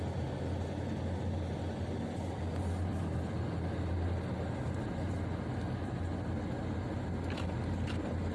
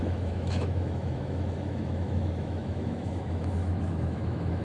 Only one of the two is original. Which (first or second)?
first